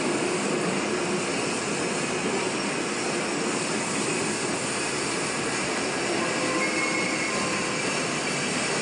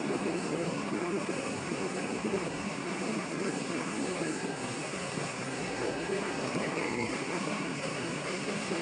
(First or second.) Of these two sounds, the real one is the first